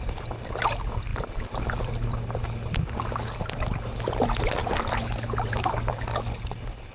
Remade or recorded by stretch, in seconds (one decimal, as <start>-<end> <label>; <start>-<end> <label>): 0.0-1.1 recorded; 1.1-2.9 remade; 2.9-6.9 recorded